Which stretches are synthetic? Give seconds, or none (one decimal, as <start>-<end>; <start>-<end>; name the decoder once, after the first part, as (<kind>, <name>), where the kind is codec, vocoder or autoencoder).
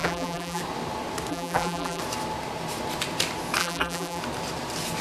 0.0-0.6 (vocoder, BigVGAN v2); 1.3-2.0; 3.6-4.2